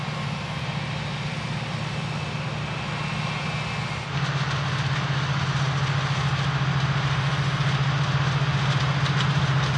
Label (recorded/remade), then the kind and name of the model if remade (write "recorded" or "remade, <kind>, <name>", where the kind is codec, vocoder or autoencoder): recorded